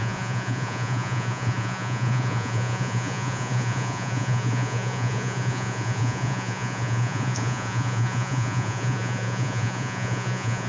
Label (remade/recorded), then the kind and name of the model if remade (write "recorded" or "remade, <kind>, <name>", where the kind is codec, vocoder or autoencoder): remade, vocoder, Vocos